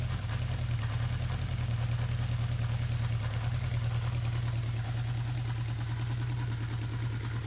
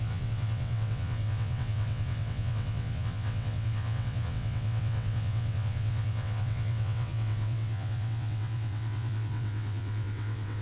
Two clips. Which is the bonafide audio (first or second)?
first